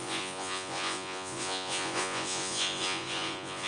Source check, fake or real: fake